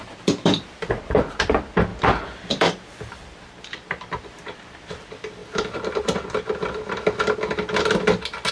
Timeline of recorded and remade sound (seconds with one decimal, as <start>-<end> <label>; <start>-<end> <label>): 0.0-1.9 remade; 1.9-2.5 recorded; 2.5-5.4 remade; 5.4-8.5 recorded